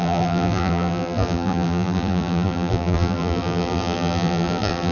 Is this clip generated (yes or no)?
yes